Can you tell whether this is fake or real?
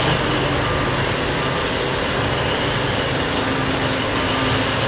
real